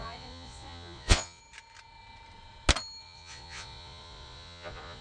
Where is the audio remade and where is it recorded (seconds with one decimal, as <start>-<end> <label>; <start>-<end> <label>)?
0.0-1.4 remade; 1.4-3.0 recorded; 3.0-5.0 remade